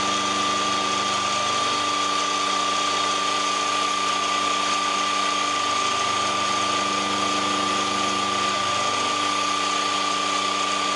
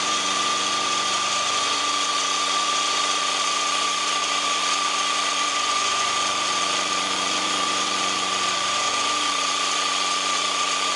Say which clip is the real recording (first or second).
first